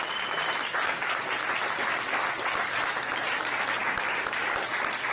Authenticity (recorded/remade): recorded